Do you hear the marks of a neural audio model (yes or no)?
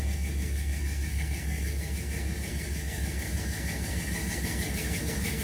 yes